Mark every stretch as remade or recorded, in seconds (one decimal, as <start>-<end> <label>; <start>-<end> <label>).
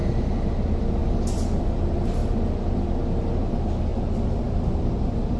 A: 0.0-5.4 recorded